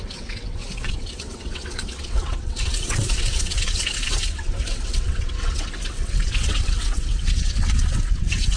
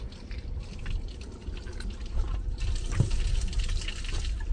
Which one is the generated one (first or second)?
first